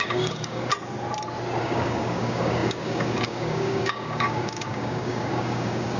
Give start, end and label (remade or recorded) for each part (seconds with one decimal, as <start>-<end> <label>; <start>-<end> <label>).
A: 0.0-0.7 remade; 0.7-1.6 recorded; 1.6-6.0 remade